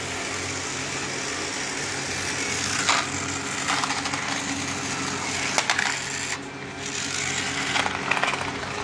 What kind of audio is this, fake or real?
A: real